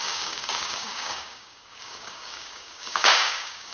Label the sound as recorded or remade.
remade